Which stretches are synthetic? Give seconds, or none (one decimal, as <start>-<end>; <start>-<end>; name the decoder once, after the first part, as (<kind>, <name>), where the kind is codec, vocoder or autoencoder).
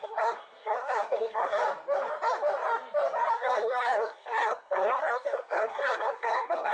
0.0-1.6 (codec, SNAC); 3.3-6.7